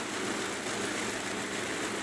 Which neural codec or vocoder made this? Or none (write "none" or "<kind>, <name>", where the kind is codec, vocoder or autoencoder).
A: none